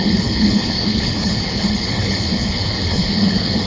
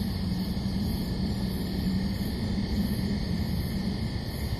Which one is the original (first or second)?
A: second